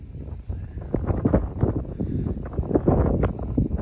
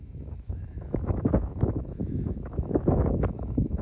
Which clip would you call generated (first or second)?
second